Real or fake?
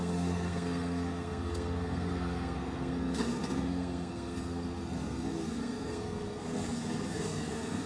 fake